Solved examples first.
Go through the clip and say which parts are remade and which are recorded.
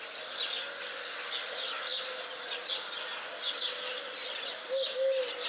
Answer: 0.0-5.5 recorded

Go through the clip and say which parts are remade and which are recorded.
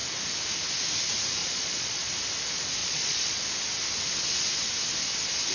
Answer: 0.0-1.4 recorded; 1.4-2.1 remade; 2.1-2.8 recorded; 2.8-3.4 remade; 3.4-5.5 recorded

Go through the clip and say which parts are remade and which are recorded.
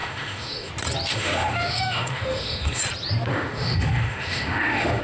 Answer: 0.0-0.7 remade; 0.7-1.1 recorded; 1.1-2.8 remade; 2.8-3.3 recorded; 3.3-5.0 remade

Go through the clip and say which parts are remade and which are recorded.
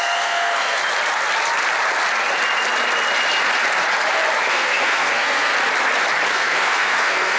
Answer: 0.0-0.8 remade; 0.8-4.5 recorded; 4.5-5.5 remade; 5.5-6.3 recorded; 6.3-7.4 remade